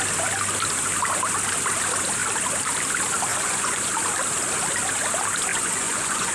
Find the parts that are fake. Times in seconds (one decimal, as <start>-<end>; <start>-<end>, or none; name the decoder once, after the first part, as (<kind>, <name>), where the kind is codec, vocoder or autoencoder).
3.3-3.9 (vocoder, Vocos); 5.5-6.3